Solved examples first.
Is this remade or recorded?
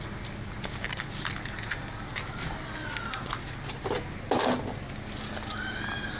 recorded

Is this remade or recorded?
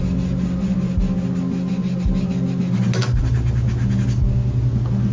recorded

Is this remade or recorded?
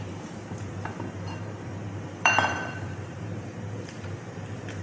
remade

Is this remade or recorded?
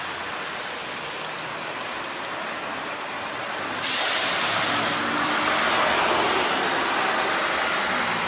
recorded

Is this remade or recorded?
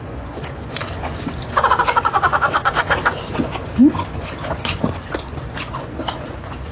remade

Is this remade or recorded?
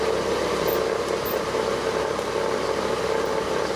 recorded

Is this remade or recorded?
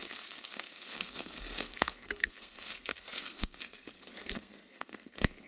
remade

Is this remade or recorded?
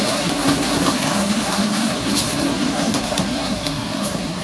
remade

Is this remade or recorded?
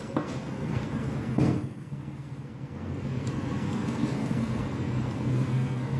remade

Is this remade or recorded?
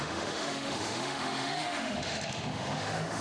remade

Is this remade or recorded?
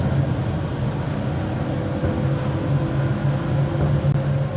recorded